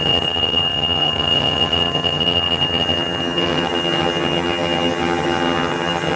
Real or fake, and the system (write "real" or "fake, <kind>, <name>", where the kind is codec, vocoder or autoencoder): fake, vocoder, HiFi-GAN